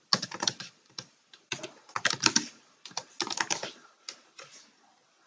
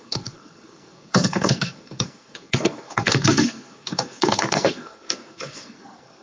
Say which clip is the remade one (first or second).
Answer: second